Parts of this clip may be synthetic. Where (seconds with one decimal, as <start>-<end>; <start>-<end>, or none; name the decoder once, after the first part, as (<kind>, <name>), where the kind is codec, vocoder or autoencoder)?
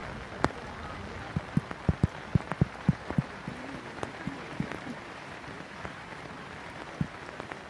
2.3-6.9 (vocoder, BigVGAN v2)